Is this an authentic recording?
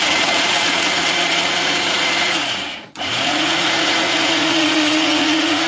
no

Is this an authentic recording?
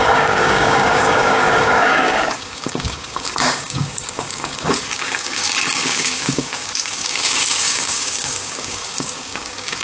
no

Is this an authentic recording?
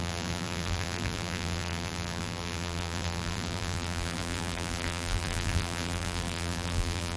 no